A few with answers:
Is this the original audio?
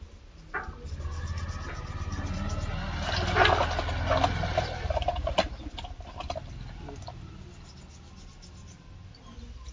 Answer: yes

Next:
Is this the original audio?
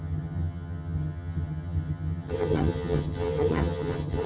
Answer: no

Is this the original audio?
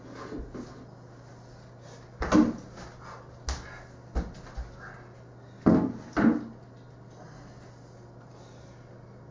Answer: yes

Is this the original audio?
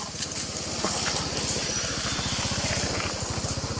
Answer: yes